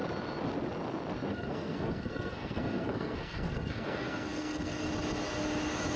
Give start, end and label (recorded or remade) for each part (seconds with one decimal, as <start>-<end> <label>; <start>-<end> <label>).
0.0-1.3 recorded; 1.3-4.9 remade; 4.9-6.0 recorded